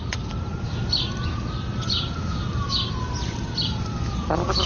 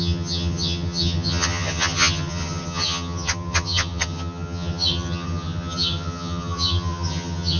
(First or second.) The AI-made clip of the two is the second